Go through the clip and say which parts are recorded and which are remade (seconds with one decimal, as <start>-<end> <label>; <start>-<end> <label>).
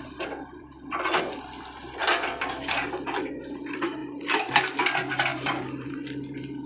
0.0-5.3 recorded; 5.3-5.9 remade; 5.9-6.7 recorded